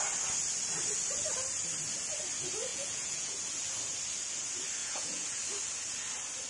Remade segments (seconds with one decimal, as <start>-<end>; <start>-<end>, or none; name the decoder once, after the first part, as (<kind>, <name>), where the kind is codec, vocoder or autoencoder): 2.7-3.4 (vocoder, Vocos); 4.8-5.4